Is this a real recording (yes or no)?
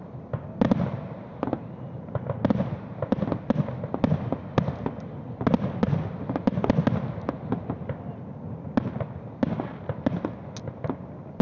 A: yes